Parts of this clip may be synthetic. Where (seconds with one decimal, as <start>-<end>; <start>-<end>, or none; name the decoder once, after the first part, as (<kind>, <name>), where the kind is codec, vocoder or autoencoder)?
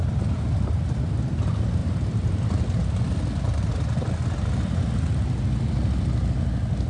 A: 1.8-2.9 (vocoder, BigVGAN v2)